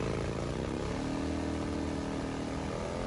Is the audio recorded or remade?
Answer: recorded